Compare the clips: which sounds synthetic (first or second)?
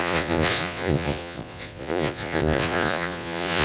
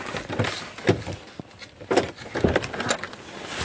first